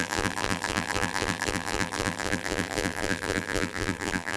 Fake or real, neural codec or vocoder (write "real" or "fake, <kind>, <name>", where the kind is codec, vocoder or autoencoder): fake, vocoder, BigVGAN v2